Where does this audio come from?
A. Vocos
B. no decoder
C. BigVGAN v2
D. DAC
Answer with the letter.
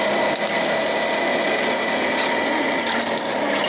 B